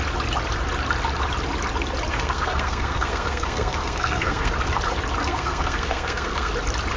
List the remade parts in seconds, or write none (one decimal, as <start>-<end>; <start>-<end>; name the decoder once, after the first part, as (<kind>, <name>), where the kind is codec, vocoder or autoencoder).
2.1-4.5 (codec, SNAC); 5.2-6.5